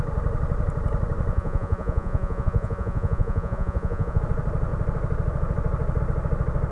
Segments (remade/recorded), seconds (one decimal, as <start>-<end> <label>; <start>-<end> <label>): 0.0-1.3 recorded; 1.3-4.2 remade; 4.2-6.7 recorded

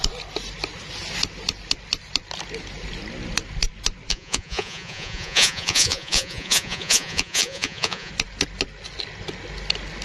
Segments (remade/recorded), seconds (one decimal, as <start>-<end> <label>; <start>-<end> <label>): 0.0-4.1 recorded; 4.1-8.1 remade; 8.1-10.0 recorded

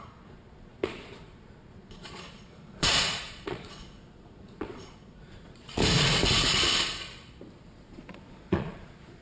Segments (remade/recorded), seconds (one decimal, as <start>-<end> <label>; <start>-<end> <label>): 0.0-5.8 remade; 5.8-7.5 recorded; 7.5-9.2 remade

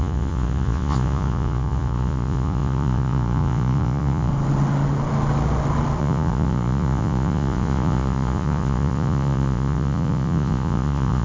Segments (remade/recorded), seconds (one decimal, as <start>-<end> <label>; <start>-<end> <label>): 0.0-4.3 remade; 4.3-6.0 recorded; 6.0-11.2 remade

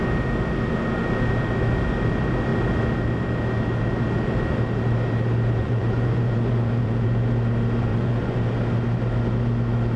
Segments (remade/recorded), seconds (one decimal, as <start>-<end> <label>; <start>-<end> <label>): 0.0-5.6 recorded; 5.6-7.3 remade; 7.3-7.9 recorded; 7.9-8.4 remade; 8.4-10.0 recorded

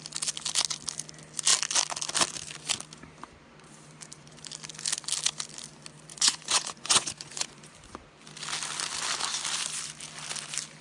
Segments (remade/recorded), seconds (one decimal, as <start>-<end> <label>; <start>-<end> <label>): 0.0-6.1 recorded; 6.1-7.7 remade; 7.7-10.8 recorded